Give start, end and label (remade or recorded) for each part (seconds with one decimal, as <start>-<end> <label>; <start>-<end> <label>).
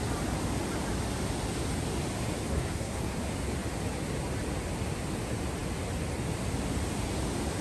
0.0-2.5 recorded; 2.5-3.2 remade; 3.2-7.6 recorded